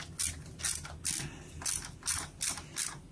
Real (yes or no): yes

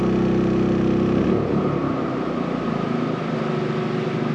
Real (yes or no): yes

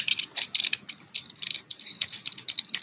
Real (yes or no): yes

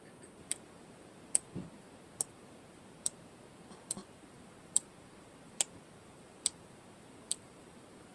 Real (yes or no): no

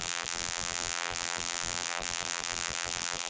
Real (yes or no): no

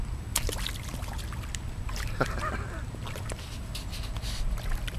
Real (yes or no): yes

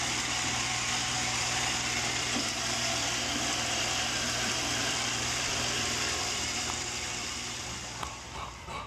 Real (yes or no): no